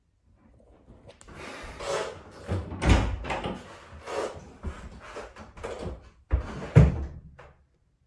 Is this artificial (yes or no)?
no